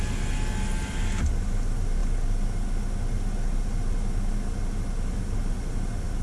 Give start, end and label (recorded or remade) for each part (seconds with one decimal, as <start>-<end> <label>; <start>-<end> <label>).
0.0-6.2 recorded